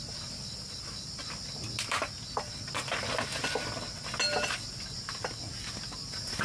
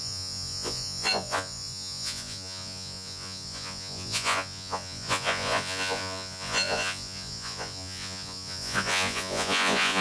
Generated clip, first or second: second